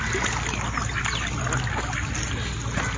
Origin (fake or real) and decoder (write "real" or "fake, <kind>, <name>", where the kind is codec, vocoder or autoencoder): real